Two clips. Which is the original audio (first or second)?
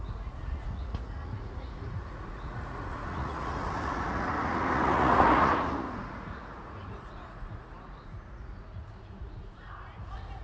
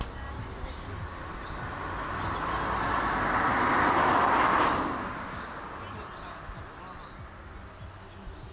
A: second